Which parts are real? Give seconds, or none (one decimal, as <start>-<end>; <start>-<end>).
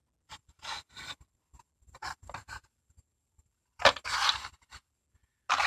0.0-5.7